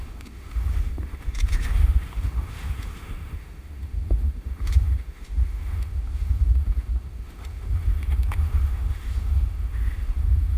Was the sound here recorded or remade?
remade